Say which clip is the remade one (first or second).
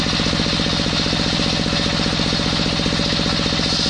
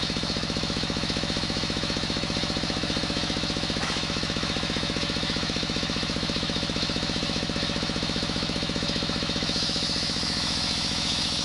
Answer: second